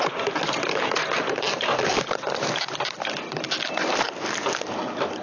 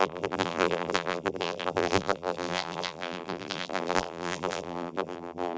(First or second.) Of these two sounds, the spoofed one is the second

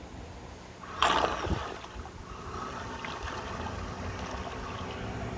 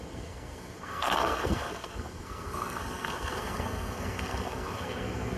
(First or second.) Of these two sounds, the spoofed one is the second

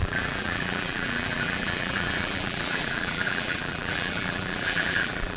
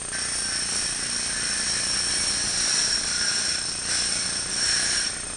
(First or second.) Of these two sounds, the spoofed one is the first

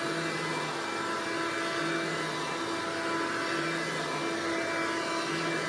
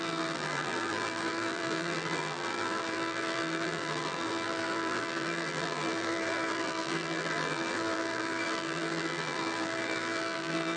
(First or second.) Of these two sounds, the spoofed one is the second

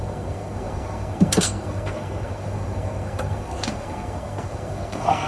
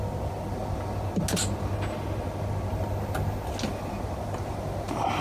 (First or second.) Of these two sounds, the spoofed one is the first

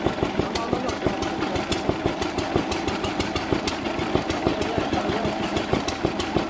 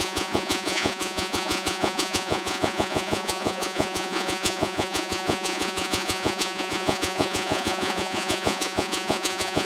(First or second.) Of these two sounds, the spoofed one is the second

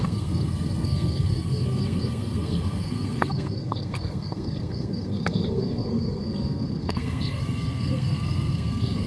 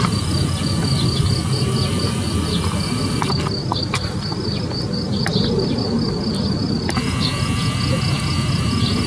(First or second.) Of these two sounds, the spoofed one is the first